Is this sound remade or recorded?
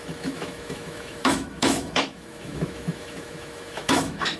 remade